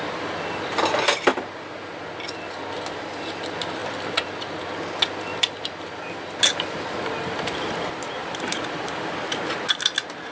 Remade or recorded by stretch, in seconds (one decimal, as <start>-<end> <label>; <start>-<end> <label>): 0.0-3.8 recorded; 3.8-4.7 remade; 4.7-5.3 recorded; 5.3-6.4 remade; 6.4-8.2 recorded; 8.2-9.0 remade; 9.0-10.3 recorded